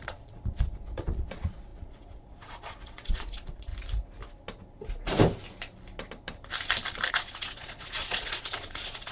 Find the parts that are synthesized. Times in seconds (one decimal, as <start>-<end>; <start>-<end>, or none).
0.0-3.7; 7.1-9.1